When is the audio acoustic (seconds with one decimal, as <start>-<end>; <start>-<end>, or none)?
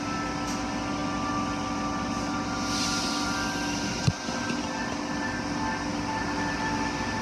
0.0-7.2